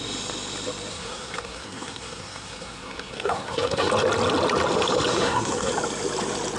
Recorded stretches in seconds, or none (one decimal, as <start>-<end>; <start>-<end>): 0.0-0.9; 3.9-5.1; 5.7-6.6